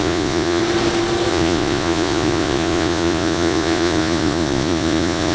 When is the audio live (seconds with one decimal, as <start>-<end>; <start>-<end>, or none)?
0.6-1.3